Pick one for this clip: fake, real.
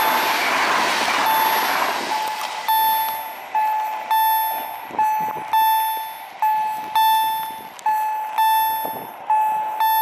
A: real